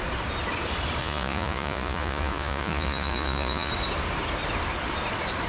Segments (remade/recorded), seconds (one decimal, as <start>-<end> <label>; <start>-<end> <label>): 0.0-1.0 recorded; 1.0-3.7 remade; 3.7-5.5 recorded